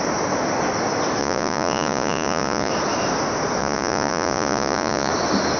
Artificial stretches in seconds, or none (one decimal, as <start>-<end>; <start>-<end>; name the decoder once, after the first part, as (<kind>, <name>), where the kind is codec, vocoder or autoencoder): 1.2-2.7 (vocoder, Vocos); 3.6-5.1